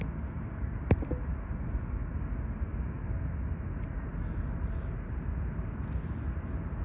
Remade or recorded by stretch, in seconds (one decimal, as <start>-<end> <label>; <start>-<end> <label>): 0.0-6.8 recorded